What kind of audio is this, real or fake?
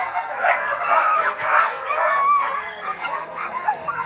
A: fake